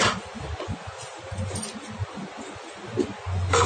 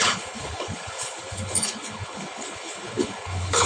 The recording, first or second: first